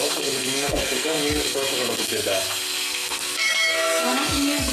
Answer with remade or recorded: remade